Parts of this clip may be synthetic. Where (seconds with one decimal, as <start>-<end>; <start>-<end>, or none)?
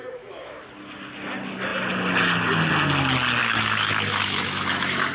0.0-0.6; 3.4-5.1